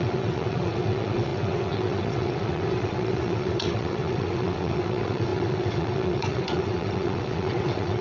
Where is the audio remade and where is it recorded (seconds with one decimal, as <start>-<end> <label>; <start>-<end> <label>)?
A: 0.0-8.0 remade